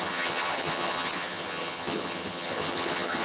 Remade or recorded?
remade